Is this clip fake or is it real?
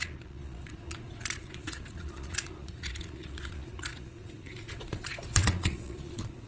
fake